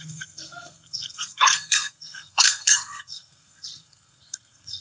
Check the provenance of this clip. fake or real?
fake